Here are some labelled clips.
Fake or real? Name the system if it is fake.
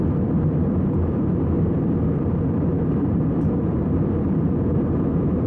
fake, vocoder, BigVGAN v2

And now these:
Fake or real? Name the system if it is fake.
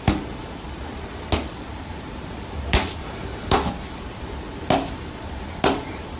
real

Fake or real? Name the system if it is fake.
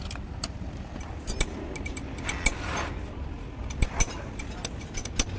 real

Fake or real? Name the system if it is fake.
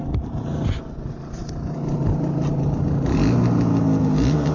real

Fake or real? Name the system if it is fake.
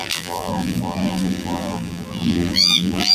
fake, vocoder, BigVGAN v2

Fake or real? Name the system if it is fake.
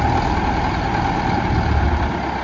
fake, vocoder, BigVGAN v2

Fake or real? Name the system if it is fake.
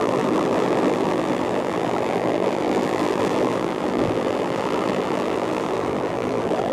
fake, vocoder, BigVGAN v2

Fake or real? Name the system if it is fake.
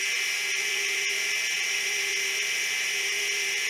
fake, vocoder, BigVGAN v2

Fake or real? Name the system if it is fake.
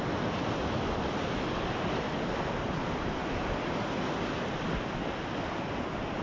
real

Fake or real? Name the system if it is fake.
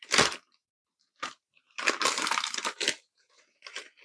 fake, vocoder, BigVGAN v2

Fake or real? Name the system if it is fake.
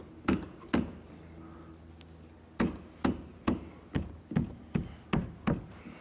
real